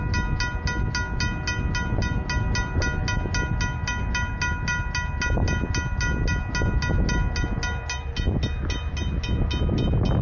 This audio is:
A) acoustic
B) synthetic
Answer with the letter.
A